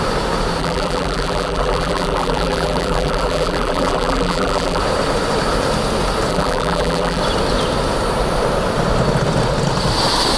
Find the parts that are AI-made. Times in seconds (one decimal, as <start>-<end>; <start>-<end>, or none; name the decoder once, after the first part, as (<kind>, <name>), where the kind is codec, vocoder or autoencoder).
0.6-4.8 (vocoder, BigVGAN v2); 6.3-7.2